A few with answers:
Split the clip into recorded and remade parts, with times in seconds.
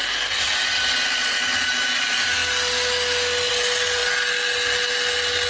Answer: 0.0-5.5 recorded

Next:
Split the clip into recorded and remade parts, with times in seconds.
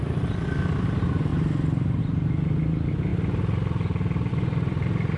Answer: 0.0-5.2 recorded